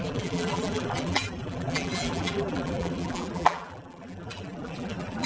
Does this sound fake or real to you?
fake